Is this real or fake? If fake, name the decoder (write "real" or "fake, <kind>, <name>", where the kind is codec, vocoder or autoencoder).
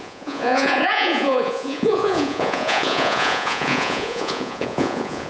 fake, vocoder, Vocos